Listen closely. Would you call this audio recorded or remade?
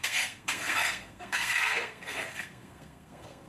remade